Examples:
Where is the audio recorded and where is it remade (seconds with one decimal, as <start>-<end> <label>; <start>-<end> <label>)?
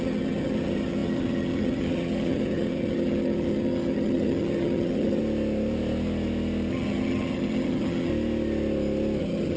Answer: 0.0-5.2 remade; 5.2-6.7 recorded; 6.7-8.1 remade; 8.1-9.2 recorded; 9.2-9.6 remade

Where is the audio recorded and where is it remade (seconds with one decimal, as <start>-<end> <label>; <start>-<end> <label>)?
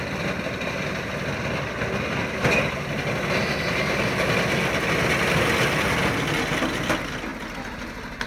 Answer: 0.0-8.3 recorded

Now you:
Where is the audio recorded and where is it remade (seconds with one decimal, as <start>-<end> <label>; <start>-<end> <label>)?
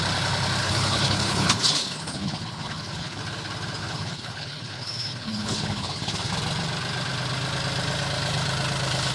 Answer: 0.0-0.6 recorded; 0.6-3.2 remade; 3.2-3.8 recorded; 3.8-6.3 remade; 6.3-9.1 recorded